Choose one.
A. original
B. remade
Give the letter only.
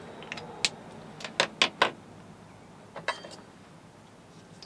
A